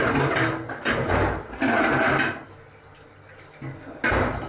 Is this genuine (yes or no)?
yes